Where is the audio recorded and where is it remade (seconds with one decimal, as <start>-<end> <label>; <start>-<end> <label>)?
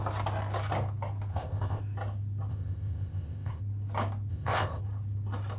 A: 0.0-1.3 recorded; 1.3-1.8 remade; 1.8-2.5 recorded; 2.5-3.6 remade; 3.6-4.3 recorded; 4.3-4.8 remade; 4.8-5.6 recorded